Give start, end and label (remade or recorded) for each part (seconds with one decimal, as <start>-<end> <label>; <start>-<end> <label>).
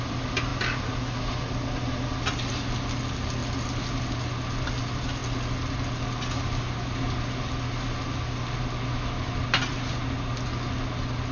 0.0-11.3 recorded